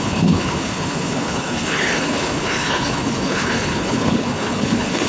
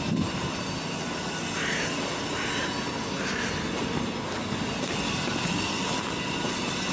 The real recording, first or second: second